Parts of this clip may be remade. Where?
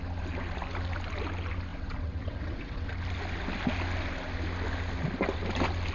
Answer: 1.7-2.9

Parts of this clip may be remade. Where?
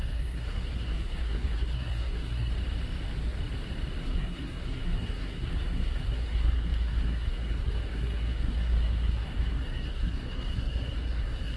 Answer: 0.0-2.5; 4.0-11.6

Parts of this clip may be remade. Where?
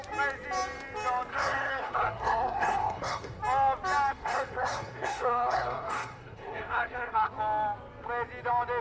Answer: 1.3-3.4; 4.1-7.3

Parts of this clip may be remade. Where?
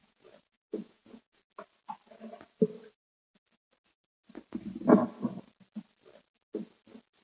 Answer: 0.0-1.4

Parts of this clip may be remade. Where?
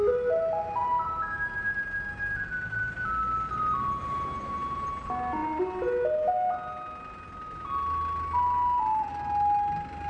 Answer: none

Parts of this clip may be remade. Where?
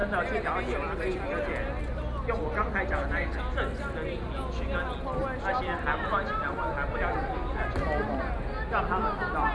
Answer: none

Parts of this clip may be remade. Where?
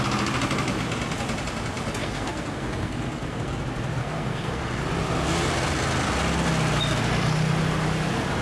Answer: 2.0-3.6; 4.0-4.8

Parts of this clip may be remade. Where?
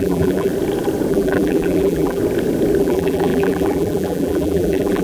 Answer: 0.0-0.5; 1.1-2.2; 2.8-5.0